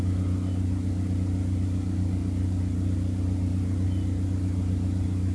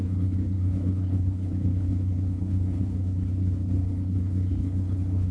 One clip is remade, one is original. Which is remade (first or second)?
second